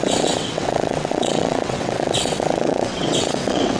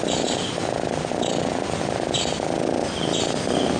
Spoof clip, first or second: first